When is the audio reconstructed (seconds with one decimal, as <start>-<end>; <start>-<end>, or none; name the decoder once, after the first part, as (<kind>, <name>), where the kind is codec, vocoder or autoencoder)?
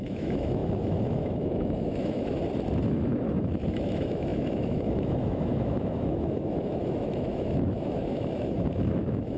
0.0-2.4 (autoencoder, DAC-VAE); 2.9-9.4